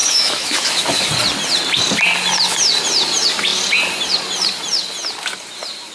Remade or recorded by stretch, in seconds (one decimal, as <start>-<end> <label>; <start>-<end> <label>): 0.0-1.1 remade; 1.1-5.9 recorded

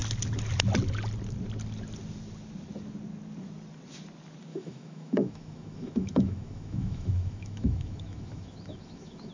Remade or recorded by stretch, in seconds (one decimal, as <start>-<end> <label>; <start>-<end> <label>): 0.0-4.5 recorded; 4.5-9.3 remade